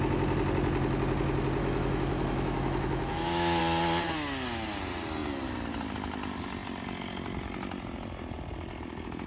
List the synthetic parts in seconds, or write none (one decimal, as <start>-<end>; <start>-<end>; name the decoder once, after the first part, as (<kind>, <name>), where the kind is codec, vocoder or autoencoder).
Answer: 1.6-3.6 (autoencoder, DAC-VAE)